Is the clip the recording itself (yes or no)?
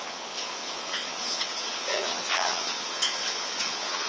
no